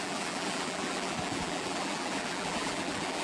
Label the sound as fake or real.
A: fake